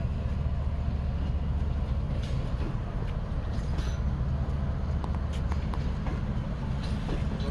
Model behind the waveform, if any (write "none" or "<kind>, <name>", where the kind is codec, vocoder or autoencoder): none